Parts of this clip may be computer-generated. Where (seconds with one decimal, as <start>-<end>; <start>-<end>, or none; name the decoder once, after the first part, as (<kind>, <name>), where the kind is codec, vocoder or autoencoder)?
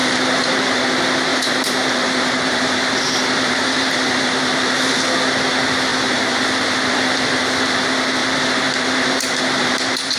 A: 0.0-0.9 (vocoder, BigVGAN v2); 1.3-4.9; 5.9-7.2; 8.2-10.2